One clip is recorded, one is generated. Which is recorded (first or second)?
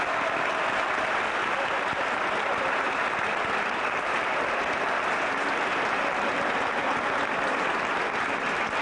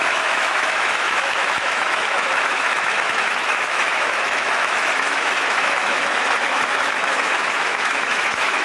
first